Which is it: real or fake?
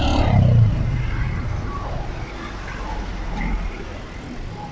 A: real